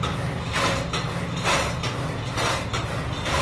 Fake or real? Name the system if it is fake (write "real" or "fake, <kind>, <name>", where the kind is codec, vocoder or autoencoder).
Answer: real